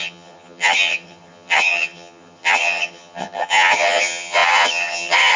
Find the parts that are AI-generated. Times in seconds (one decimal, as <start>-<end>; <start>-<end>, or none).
0.0-5.4